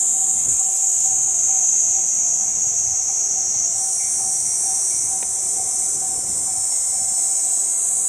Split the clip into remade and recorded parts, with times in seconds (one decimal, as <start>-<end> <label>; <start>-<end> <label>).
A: 0.0-0.4 recorded; 0.4-1.1 remade; 1.1-8.1 recorded